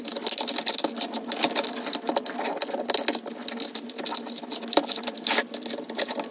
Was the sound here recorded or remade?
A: recorded